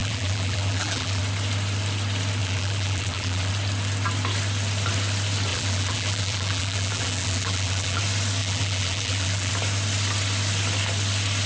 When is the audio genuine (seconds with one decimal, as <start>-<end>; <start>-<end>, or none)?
1.2-2.4; 3.5-5.5; 8.0-8.4; 9.5-11.5